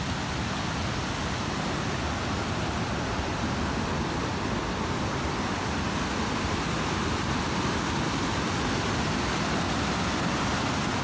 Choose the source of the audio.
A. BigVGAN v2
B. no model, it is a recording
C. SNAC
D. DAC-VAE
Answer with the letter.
B